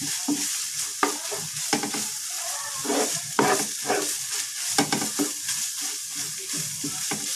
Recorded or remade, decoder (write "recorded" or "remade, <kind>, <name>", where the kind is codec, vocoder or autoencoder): remade, vocoder, BigVGAN v2